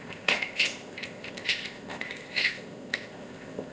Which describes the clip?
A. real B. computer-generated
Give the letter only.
B